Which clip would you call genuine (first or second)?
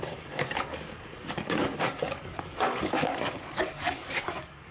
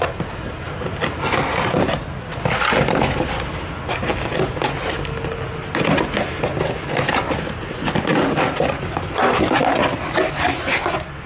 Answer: second